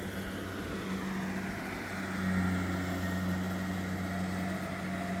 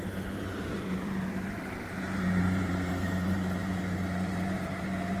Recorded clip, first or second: first